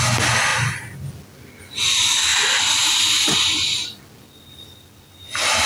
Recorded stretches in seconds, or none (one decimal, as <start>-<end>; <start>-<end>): 0.0-5.7